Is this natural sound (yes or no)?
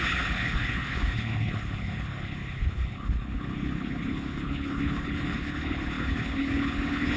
no